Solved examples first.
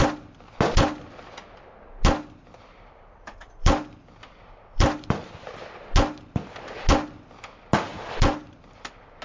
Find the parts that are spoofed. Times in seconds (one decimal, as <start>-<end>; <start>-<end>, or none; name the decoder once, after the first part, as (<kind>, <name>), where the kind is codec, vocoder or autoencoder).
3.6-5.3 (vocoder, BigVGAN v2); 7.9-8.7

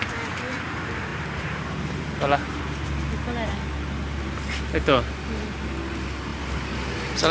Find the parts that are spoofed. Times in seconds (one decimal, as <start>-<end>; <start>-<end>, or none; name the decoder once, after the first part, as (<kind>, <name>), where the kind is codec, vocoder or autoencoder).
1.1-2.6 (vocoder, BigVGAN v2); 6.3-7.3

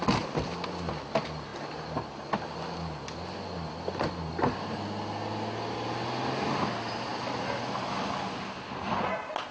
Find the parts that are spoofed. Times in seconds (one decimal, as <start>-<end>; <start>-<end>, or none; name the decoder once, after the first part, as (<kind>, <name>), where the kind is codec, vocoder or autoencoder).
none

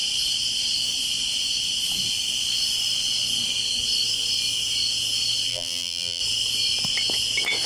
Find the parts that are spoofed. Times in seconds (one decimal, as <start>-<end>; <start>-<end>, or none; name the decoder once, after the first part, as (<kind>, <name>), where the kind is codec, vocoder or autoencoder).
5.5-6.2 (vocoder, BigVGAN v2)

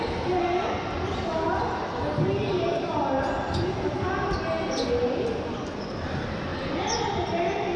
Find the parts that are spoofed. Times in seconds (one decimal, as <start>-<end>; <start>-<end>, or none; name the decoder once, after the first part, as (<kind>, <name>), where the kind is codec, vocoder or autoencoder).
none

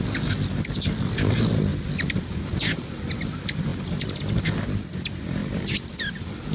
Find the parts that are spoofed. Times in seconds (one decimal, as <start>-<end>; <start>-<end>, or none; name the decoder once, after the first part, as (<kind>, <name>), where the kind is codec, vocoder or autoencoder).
1.7-2.4 (vocoder, BigVGAN v2); 3.7-4.2; 5.4-6.0

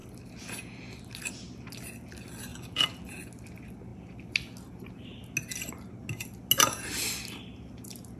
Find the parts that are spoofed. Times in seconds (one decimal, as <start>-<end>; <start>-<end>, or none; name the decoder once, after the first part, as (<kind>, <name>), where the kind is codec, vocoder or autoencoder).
2.5-3.2 (vocoder, BigVGAN v2)

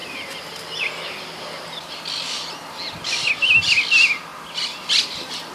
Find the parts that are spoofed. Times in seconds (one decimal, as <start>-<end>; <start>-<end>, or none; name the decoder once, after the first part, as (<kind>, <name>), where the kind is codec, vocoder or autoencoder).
none